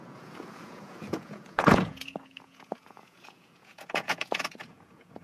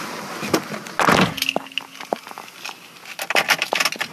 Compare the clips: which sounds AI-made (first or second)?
first